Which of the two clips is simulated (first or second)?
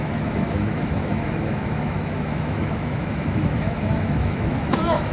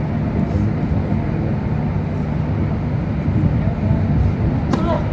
first